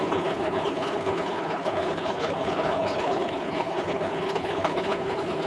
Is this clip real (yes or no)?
no